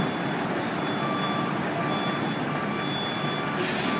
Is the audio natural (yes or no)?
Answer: yes